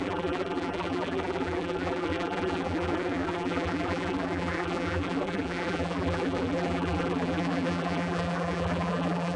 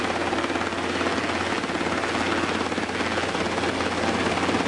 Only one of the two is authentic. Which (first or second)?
second